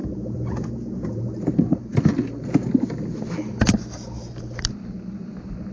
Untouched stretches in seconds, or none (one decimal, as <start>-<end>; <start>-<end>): 1.2-5.7